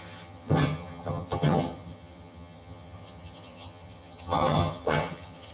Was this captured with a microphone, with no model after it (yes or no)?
no